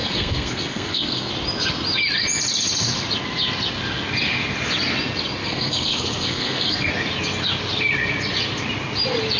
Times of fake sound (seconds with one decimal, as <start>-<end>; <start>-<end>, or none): 0.0-1.3; 5.4-6.9

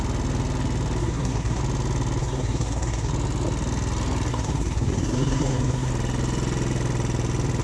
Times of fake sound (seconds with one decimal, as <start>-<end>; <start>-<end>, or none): 1.0-1.6; 2.2-3.1; 4.3-5.9

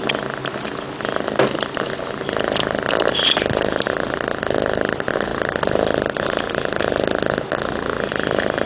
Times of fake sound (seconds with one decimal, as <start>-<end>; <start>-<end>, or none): none

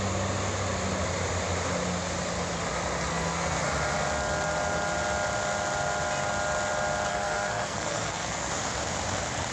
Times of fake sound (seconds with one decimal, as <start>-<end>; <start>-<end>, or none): 3.1-3.6; 7.1-8.5

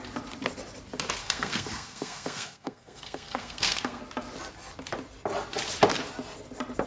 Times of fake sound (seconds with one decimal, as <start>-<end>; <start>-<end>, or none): 1.2-4.0

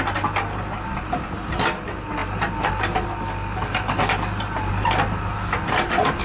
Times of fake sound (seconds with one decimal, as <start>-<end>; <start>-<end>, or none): none

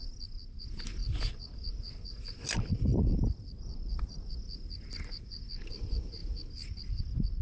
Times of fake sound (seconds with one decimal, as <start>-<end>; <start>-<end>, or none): none

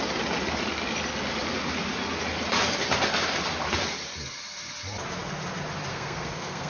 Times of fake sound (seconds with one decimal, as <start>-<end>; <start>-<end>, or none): 5.9-6.7